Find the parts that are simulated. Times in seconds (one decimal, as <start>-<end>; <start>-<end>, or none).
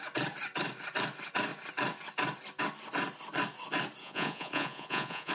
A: 4.0-5.3